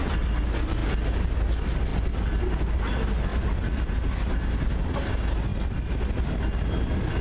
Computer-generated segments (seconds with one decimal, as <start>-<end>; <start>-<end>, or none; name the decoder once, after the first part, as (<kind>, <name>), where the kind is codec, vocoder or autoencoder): none